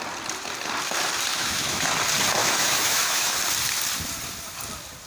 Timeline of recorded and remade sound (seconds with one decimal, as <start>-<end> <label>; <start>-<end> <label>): 0.0-1.3 recorded; 1.3-1.9 remade; 1.9-2.4 recorded; 2.4-3.4 remade; 3.4-5.1 recorded